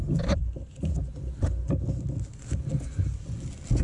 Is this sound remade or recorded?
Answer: recorded